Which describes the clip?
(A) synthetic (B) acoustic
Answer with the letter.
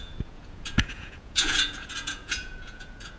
A